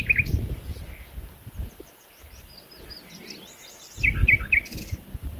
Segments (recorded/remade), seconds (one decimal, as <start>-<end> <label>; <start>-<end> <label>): 0.0-5.4 recorded

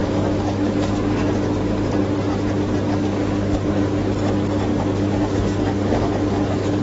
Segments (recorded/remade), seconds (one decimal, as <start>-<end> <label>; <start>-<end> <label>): 0.0-1.2 remade; 1.2-2.9 recorded; 2.9-3.7 remade; 3.7-4.7 recorded; 4.7-6.8 remade

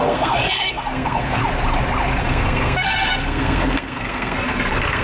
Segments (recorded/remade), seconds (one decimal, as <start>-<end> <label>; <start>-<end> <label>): 0.0-1.4 remade; 1.4-2.2 recorded; 2.2-5.0 remade

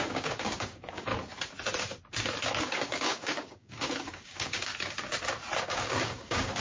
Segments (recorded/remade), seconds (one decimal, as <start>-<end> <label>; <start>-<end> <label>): 0.0-1.1 remade; 1.1-2.6 recorded; 2.6-4.7 remade; 4.7-5.6 recorded; 5.6-6.6 remade

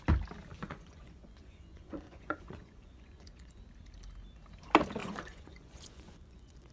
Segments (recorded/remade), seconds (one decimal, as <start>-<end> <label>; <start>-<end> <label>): 0.0-0.5 recorded; 0.5-3.6 remade; 3.6-5.0 recorded; 5.0-6.7 remade

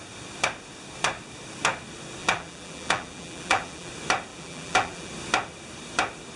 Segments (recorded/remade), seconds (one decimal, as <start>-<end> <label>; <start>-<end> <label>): 0.0-2.2 recorded; 2.2-3.9 remade; 3.9-4.3 recorded; 4.3-5.1 remade; 5.1-6.4 recorded